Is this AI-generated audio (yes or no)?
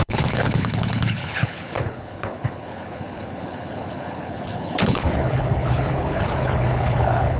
yes